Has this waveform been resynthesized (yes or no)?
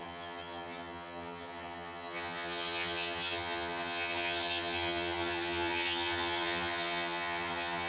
yes